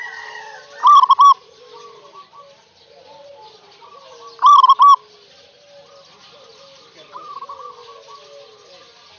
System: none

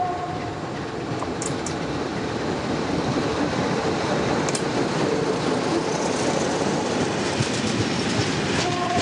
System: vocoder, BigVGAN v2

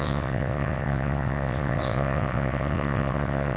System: vocoder, WaveNeXt